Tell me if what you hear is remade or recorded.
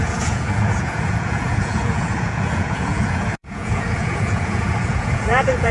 remade